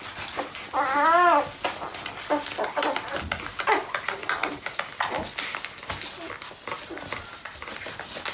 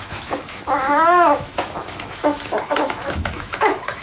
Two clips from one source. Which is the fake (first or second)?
second